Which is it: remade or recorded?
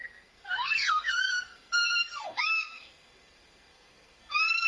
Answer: remade